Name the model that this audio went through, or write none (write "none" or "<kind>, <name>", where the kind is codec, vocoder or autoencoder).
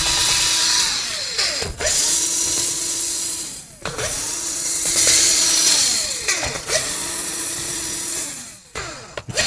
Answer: vocoder, Vocos